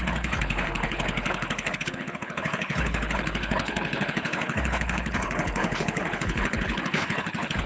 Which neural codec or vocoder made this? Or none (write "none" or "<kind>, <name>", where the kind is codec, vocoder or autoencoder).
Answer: codec, HILCodec